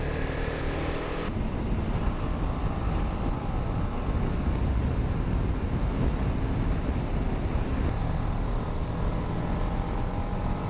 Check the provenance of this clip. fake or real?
real